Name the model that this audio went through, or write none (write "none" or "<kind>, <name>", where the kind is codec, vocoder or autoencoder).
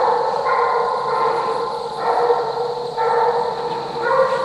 none